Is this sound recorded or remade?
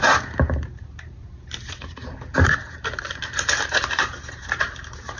remade